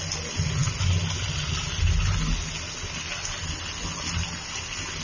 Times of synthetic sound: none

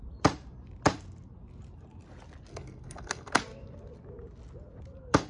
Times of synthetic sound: 2.5-3.3 (codec, SNAC)

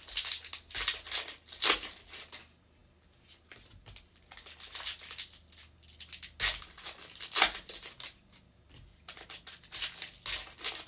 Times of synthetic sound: none

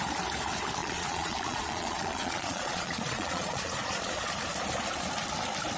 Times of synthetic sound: 0.8-4.3 (vocoder, Vocos)

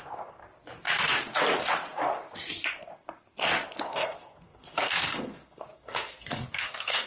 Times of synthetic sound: 0.0-0.4 (codec, SNAC); 3.8-7.1